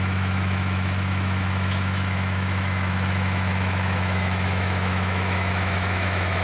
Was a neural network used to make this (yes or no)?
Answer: yes